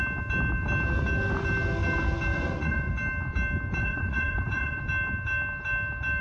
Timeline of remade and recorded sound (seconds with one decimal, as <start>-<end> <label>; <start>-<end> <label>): 0.0-2.3 recorded; 2.3-2.9 remade; 2.9-3.8 recorded; 3.8-4.8 remade; 4.8-6.2 recorded